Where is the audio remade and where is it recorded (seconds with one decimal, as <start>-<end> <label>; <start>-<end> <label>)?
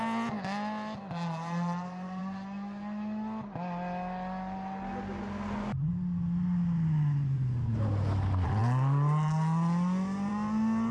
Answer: 0.0-10.9 recorded